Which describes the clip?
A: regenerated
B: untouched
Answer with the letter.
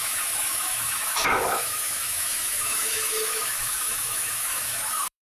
A